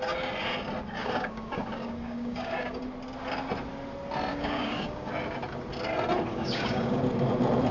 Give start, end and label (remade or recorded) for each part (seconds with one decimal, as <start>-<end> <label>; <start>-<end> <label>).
0.0-1.0 recorded; 1.0-2.8 remade; 2.8-4.3 recorded; 4.3-5.1 remade; 5.1-6.3 recorded; 6.3-7.0 remade; 7.0-7.7 recorded